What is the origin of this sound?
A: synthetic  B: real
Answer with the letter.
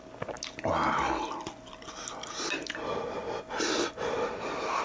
B